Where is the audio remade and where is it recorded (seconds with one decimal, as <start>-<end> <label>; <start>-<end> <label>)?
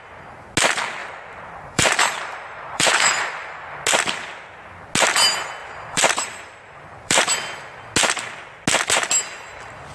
0.0-1.0 recorded; 1.0-3.1 remade; 3.1-5.6 recorded; 5.6-7.2 remade; 7.2-9.9 recorded